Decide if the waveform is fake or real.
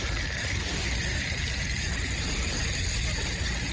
real